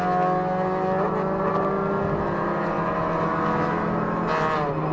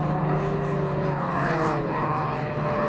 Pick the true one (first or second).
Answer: first